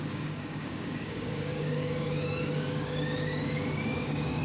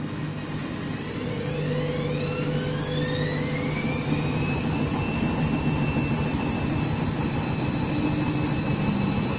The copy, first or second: first